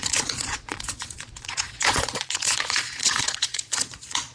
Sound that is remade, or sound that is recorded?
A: remade